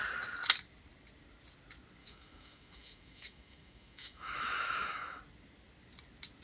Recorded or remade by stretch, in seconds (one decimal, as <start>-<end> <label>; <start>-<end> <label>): 0.0-2.0 recorded; 2.0-5.2 remade; 5.2-6.4 recorded